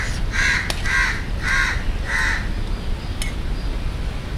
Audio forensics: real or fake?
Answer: real